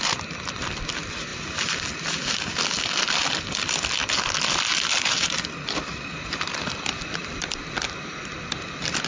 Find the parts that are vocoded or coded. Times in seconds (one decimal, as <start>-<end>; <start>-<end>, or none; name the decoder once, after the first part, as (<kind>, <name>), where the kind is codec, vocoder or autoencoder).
none